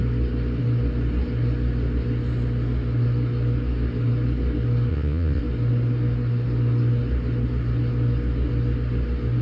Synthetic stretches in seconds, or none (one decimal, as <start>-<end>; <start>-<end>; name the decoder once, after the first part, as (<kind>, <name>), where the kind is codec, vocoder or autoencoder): 4.9-5.4 (vocoder, Vocos)